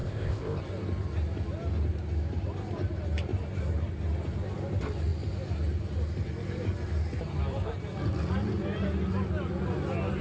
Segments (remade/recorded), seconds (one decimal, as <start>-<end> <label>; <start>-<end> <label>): 0.0-0.6 remade; 0.6-10.2 recorded